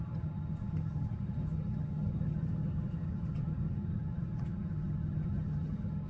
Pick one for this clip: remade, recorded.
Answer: remade